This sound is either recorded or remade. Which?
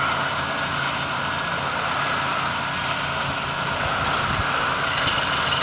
recorded